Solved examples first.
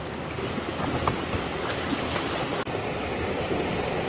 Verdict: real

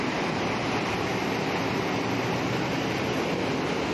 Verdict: real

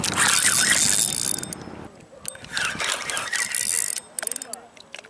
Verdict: real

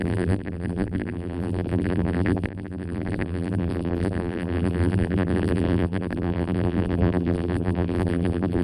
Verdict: fake